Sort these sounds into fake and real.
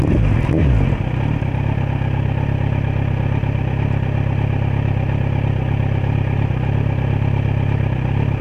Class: real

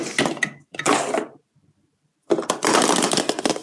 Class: real